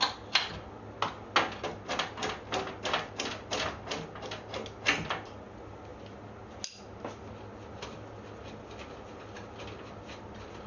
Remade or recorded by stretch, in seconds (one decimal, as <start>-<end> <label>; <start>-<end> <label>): 0.0-10.7 recorded